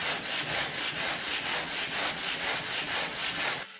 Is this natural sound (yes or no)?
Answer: no